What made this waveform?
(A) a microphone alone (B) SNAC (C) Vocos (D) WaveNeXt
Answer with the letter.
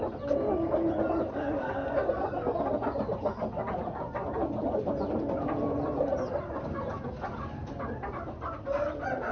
A